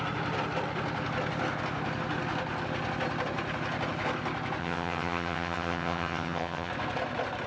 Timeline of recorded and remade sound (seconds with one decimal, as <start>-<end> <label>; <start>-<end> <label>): 0.0-4.6 recorded; 4.6-6.7 remade; 6.7-7.5 recorded